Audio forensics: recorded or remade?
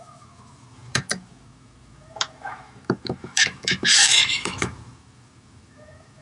remade